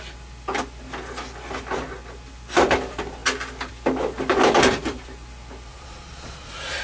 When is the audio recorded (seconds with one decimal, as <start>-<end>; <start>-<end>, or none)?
0.0-5.7